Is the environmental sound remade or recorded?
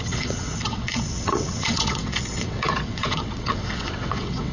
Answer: remade